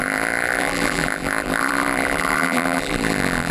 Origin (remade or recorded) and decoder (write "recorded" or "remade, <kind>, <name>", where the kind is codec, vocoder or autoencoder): remade, vocoder, BigVGAN v2